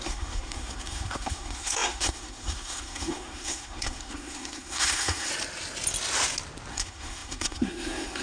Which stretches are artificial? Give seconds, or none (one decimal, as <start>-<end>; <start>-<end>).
0.0-5.3; 6.7-8.2